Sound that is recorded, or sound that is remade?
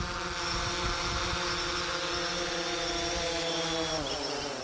recorded